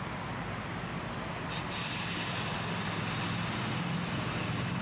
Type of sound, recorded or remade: recorded